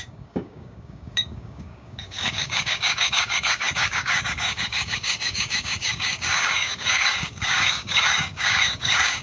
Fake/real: fake